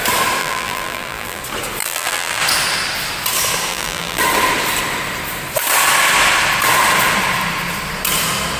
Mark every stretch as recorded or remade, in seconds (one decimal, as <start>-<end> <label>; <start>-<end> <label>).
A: 0.0-0.4 recorded; 0.4-1.4 remade; 1.4-1.8 recorded; 1.8-2.4 remade; 2.4-3.7 recorded; 3.7-4.2 remade; 4.2-8.6 recorded